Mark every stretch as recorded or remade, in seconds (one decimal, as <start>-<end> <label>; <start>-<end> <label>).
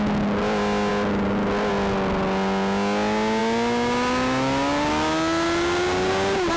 0.0-6.6 recorded